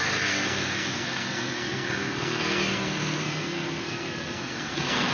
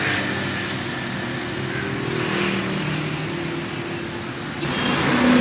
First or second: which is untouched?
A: second